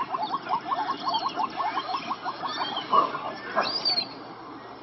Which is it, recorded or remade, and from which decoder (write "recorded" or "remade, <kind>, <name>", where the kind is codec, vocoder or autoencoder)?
remade, vocoder, BigVGAN v2